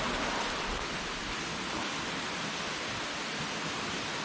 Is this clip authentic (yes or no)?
yes